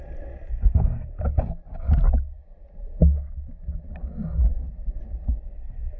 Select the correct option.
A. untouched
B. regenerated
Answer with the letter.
A